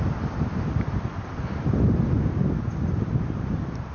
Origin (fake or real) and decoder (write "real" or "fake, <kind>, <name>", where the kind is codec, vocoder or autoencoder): real